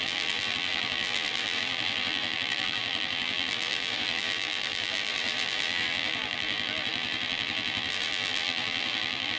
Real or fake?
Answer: fake